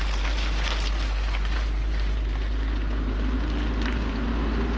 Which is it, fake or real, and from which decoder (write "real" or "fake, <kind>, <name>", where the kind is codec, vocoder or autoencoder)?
real